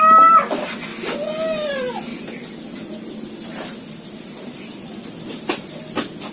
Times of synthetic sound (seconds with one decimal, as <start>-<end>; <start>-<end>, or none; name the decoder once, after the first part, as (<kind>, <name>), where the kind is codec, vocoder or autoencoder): none